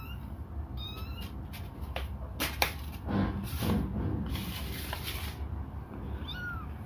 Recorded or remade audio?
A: recorded